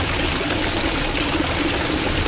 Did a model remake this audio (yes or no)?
no